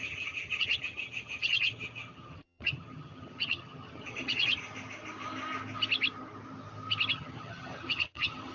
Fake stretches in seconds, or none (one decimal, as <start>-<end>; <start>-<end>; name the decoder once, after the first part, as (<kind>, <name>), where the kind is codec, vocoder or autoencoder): 0.0-4.6 (vocoder, HiFi-GAN); 7.1-8.5